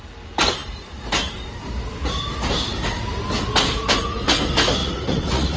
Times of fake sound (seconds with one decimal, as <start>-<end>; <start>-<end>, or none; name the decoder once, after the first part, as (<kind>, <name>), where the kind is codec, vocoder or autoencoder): 4.8-5.6 (vocoder, Vocos)